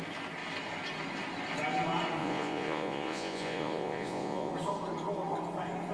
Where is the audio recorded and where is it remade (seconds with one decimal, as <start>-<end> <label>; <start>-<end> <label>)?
0.0-2.2 recorded; 2.2-4.5 remade; 4.5-5.9 recorded